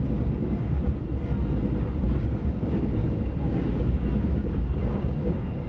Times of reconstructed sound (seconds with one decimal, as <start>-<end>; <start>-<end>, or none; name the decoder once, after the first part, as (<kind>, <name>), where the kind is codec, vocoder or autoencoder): 0.0-1.0 (codec, DAC); 2.2-5.7